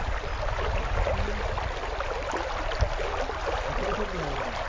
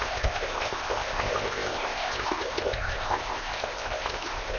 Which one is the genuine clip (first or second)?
first